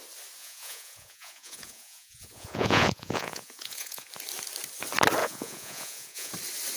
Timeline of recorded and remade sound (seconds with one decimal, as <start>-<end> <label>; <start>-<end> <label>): 0.0-0.4 recorded; 0.4-4.1 remade; 4.1-5.2 recorded; 5.2-6.3 remade; 6.3-6.8 recorded

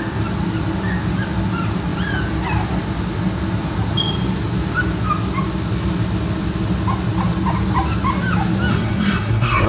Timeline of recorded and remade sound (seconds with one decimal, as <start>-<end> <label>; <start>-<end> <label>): 0.0-8.7 recorded; 8.7-9.7 remade

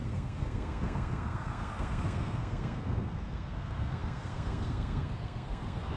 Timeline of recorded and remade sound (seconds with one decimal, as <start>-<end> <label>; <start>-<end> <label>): 0.0-6.0 remade

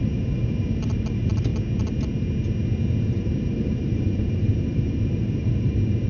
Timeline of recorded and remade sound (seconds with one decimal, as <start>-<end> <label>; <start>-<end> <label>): 0.0-1.5 remade; 1.5-3.0 recorded; 3.0-6.1 remade